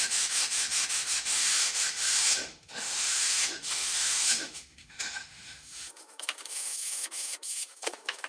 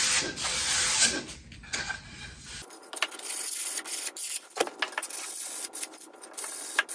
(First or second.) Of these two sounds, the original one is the second